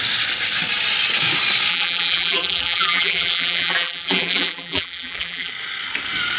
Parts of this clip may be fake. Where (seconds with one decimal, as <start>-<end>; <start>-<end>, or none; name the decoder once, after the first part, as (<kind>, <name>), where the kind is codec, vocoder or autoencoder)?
1.7-5.5 (vocoder, BigVGAN v2)